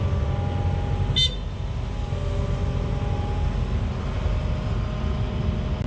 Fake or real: real